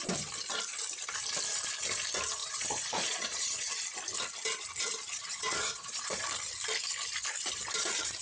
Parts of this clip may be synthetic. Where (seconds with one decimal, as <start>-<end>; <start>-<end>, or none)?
2.4-3.7; 5.1-6.2